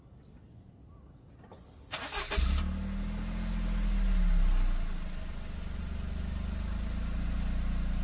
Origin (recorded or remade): recorded